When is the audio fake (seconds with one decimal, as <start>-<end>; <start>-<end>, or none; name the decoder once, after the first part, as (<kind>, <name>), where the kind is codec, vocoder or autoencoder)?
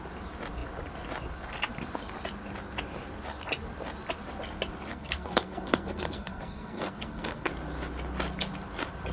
4.9-7.5 (codec, SNAC)